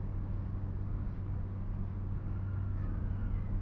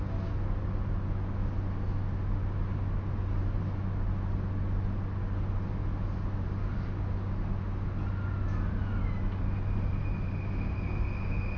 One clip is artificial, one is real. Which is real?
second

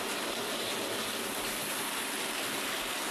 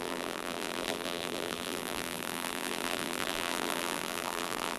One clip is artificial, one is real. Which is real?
first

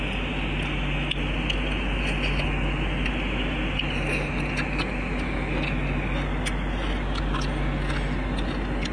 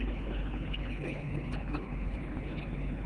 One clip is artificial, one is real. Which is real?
first